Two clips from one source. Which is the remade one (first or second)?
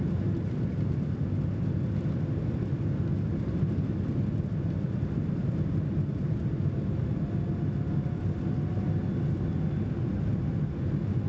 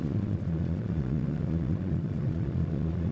second